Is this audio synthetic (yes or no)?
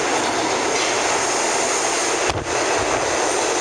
no